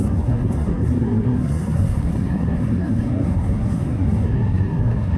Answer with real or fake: fake